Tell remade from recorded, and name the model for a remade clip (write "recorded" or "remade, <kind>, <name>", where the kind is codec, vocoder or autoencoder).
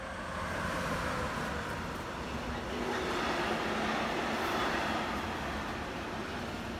recorded